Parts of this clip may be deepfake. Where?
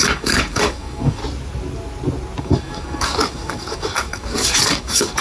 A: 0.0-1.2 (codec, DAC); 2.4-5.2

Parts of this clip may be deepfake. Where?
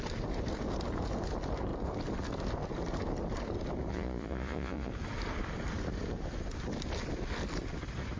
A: 3.9-4.9 (vocoder, Vocos)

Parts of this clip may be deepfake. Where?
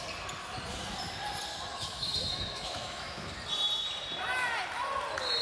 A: 1.7-3.3 (autoencoder, DAC-VAE)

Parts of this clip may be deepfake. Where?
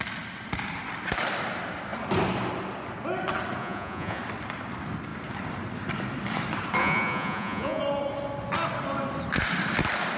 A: 3.6-4.2 (vocoder, Vocos); 6.8-7.8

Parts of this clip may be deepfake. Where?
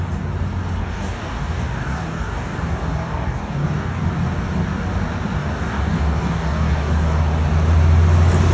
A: 0.8-4.0 (codec, DAC); 5.4-7.2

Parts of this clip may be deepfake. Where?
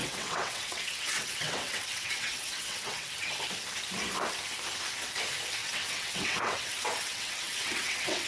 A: 0.0-3.4 (vocoder, WaveNeXt); 5.6-8.3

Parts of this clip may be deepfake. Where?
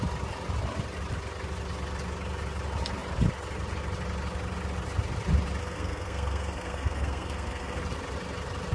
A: 5.6-7.8 (codec, SNAC)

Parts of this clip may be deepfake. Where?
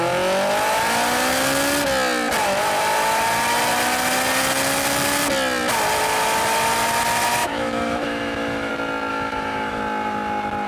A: 7.4-8.7 (autoencoder, DAC-VAE); 9.1-9.8